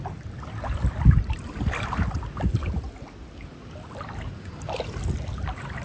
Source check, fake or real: real